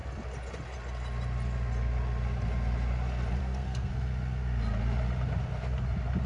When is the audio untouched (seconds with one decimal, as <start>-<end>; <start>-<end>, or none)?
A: 0.0-3.4; 3.9-6.3